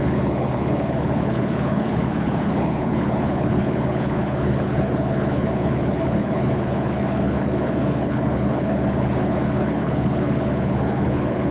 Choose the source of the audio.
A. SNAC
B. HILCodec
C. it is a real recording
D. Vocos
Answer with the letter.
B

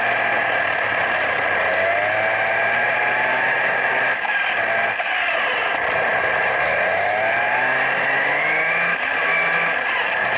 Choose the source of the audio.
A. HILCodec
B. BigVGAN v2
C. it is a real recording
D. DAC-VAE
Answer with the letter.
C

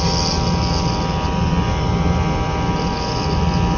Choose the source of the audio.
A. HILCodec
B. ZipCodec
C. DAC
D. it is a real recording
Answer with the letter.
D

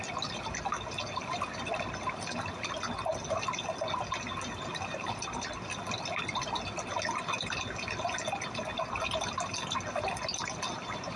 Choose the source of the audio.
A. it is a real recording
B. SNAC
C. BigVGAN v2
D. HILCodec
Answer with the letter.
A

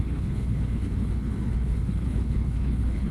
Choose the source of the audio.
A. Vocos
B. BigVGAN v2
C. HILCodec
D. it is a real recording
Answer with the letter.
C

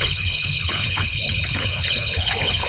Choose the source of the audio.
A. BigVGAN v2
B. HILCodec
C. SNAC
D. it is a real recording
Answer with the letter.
B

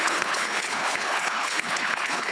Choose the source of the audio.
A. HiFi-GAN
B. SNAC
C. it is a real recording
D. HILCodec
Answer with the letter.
D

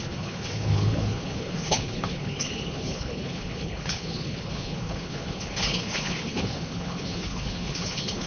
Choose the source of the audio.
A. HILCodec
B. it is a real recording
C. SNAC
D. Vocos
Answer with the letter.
A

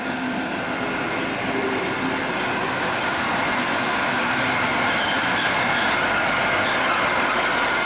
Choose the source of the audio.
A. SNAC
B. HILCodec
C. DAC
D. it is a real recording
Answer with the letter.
D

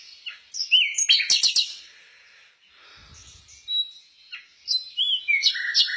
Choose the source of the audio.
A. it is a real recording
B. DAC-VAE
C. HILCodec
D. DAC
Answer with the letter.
A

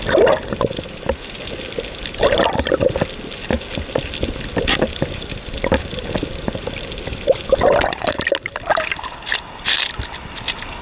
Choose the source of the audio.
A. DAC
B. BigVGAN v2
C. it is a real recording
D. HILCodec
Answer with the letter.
C